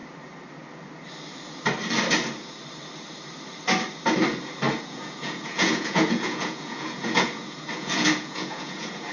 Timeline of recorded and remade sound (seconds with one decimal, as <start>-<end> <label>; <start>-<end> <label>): 0.0-4.8 recorded; 4.8-9.1 remade